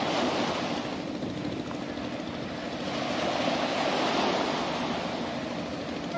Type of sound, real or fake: real